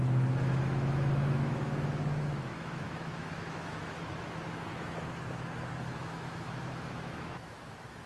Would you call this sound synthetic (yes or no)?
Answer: yes